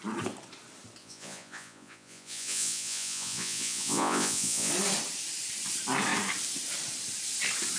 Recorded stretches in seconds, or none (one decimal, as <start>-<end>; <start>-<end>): 0.0-1.0; 4.7-7.8